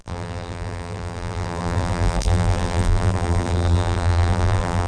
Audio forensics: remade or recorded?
remade